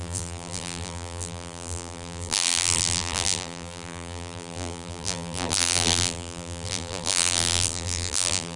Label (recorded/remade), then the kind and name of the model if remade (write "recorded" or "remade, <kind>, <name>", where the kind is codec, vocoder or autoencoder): remade, vocoder, BigVGAN v2